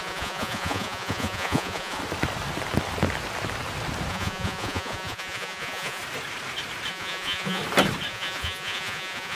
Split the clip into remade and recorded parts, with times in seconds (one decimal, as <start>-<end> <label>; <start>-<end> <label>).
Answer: 0.0-2.0 remade; 2.0-4.1 recorded; 4.1-6.0 remade; 6.0-6.9 recorded; 6.9-7.6 remade; 7.6-8.1 recorded; 8.1-9.4 remade